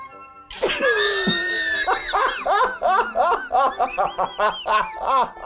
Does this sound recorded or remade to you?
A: recorded